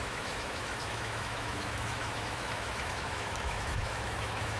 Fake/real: fake